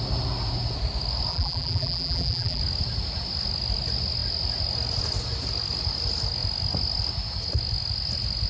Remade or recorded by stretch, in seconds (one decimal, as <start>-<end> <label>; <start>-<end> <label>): 0.0-1.3 recorded; 1.3-2.6 remade; 2.6-8.5 recorded